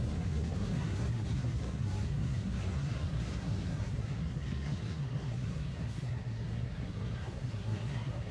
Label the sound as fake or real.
fake